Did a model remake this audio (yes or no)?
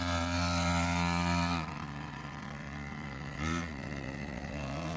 yes